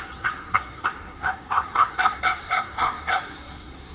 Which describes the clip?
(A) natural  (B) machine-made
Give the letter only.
B